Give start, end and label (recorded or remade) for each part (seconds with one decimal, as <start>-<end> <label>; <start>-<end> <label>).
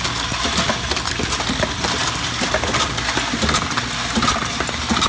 0.0-5.1 recorded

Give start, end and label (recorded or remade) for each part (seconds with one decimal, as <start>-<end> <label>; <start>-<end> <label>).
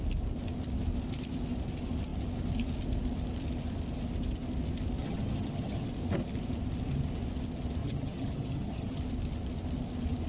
0.0-5.0 recorded; 5.0-5.9 remade; 5.9-7.8 recorded; 7.8-9.0 remade; 9.0-10.3 recorded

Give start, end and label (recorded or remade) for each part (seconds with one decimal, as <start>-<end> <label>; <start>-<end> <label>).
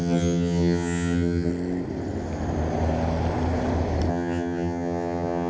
0.0-1.5 remade; 1.5-4.1 recorded; 4.1-5.5 remade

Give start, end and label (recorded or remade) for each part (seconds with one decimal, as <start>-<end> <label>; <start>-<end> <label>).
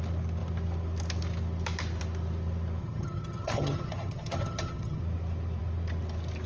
0.0-2.8 recorded; 2.8-5.0 remade; 5.0-6.5 recorded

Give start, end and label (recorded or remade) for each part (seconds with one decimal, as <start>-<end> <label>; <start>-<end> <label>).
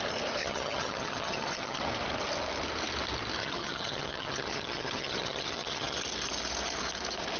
0.0-0.4 recorded; 0.4-1.8 remade; 1.8-3.4 recorded; 3.4-6.0 remade; 6.0-7.4 recorded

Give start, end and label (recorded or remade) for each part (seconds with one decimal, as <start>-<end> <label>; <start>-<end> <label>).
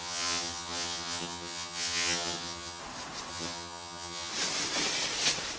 0.0-2.8 remade; 2.8-3.3 recorded; 3.3-4.3 remade; 4.3-5.6 recorded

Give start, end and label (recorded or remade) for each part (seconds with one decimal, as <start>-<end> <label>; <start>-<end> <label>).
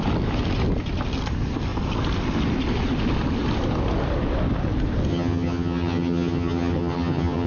0.0-5.1 recorded; 5.1-7.5 remade